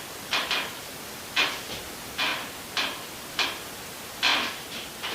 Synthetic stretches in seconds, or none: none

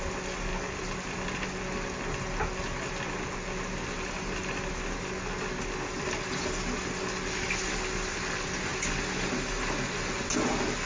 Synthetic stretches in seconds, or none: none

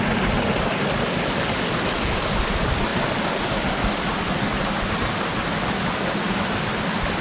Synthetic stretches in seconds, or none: none